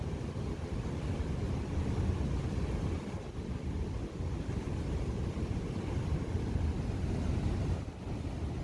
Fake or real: real